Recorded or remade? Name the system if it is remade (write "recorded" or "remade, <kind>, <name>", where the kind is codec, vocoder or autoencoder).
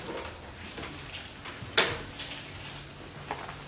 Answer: recorded